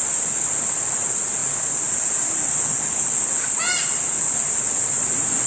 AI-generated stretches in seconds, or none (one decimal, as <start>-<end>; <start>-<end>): none